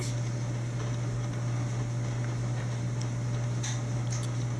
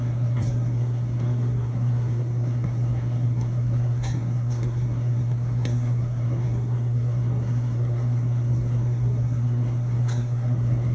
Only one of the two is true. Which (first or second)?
first